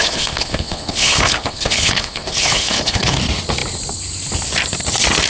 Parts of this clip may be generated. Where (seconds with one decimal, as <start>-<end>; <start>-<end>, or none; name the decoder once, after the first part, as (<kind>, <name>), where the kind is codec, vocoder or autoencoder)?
0.0-3.2 (codec, HILCodec)